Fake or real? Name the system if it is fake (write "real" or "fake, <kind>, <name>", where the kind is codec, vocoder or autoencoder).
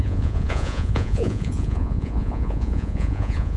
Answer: fake, vocoder, Vocos